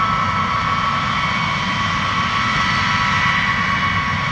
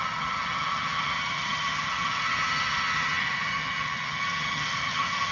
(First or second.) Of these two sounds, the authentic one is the first